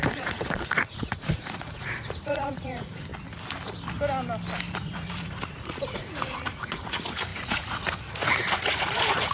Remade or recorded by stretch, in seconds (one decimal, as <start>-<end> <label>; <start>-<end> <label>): 0.0-3.1 remade; 3.1-4.7 recorded; 4.7-9.3 remade